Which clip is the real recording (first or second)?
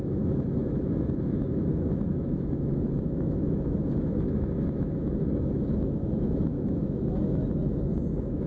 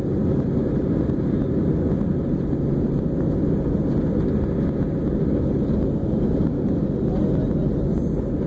second